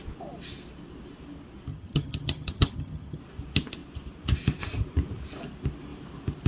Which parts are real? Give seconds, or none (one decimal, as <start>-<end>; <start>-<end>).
0.0-1.7; 3.2-6.5